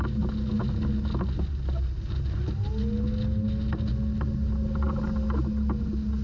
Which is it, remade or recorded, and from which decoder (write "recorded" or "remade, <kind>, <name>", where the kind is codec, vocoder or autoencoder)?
recorded